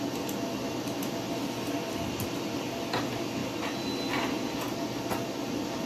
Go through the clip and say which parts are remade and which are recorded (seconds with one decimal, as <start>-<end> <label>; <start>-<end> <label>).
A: 0.0-5.9 recorded